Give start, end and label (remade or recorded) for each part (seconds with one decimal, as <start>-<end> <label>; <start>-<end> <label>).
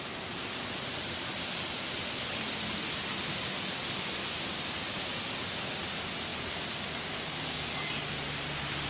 0.0-8.9 recorded